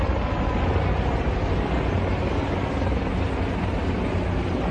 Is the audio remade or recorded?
recorded